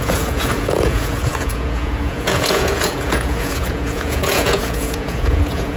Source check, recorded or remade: remade